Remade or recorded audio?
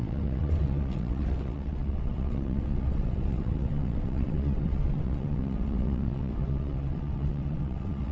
remade